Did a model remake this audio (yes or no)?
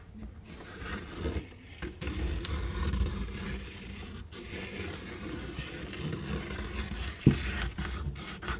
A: no